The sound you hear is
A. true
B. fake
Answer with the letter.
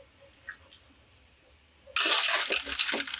A